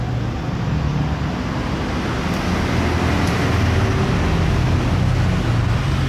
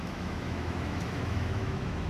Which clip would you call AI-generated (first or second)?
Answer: second